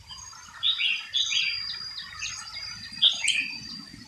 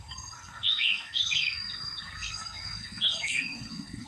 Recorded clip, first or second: first